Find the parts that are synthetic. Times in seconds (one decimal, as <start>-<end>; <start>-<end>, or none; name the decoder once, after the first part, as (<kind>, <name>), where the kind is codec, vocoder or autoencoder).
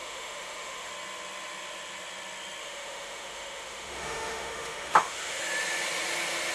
0.0-0.9 (autoencoder, DAC-VAE); 2.6-5.4